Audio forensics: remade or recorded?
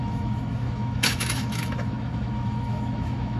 remade